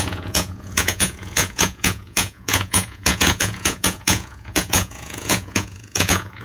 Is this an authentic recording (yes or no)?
no